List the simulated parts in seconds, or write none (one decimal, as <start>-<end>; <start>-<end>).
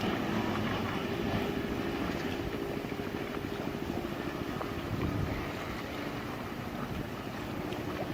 none